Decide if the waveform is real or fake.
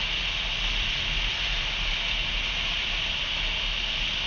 real